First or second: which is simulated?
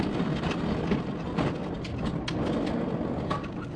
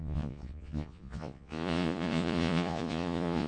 second